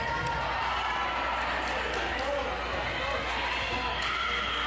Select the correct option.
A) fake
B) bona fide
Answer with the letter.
B